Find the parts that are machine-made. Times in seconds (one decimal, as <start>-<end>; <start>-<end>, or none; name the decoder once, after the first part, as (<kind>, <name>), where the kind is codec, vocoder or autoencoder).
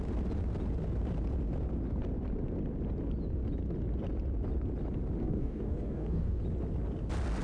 5.2-6.4 (codec, DAC)